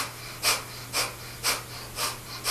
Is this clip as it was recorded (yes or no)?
yes